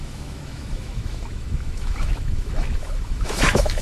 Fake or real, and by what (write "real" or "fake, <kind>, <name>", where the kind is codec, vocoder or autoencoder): fake, autoencoder, DAC-VAE